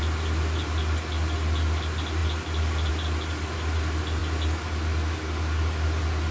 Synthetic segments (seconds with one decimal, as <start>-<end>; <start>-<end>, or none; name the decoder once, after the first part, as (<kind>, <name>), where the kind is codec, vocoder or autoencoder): none